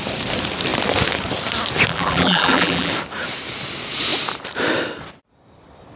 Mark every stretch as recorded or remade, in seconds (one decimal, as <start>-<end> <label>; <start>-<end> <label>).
0.0-1.9 recorded; 1.9-2.9 remade; 2.9-6.0 recorded